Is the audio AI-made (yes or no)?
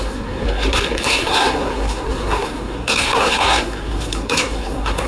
yes